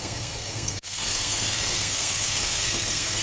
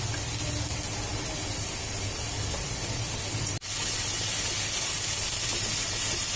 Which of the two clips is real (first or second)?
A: second